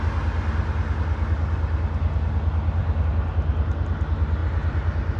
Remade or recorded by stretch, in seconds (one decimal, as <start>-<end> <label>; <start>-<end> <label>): 0.0-4.4 recorded; 4.4-5.2 remade